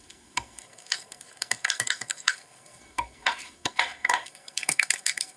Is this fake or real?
fake